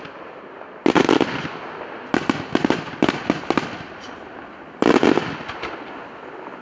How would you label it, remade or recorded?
recorded